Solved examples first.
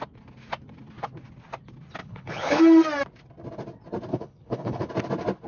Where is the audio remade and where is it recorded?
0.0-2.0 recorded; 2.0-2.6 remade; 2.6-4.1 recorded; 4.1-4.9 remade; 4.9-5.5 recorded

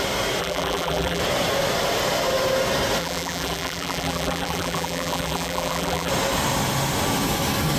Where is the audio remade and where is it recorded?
0.0-0.4 recorded; 0.4-1.2 remade; 1.2-3.0 recorded; 3.0-6.1 remade; 6.1-7.8 recorded

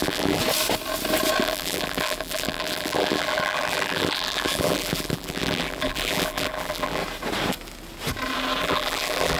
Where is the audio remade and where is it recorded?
0.0-0.4 remade; 0.4-1.4 recorded; 1.4-7.0 remade; 7.0-8.6 recorded; 8.6-9.4 remade

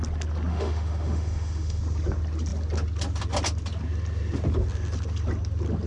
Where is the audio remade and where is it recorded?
0.0-0.5 recorded; 0.5-1.8 remade; 1.8-5.9 recorded